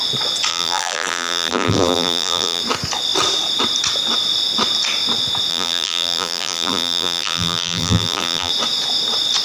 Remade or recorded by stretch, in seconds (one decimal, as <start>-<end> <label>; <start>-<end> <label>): 0.0-0.5 recorded; 0.5-2.6 remade; 2.6-5.5 recorded; 5.5-8.5 remade; 8.5-9.4 recorded